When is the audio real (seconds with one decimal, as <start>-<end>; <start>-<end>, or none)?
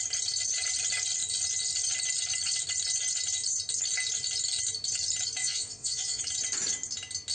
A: 0.0-5.4; 6.2-7.3